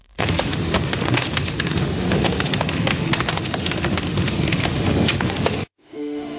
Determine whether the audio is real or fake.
fake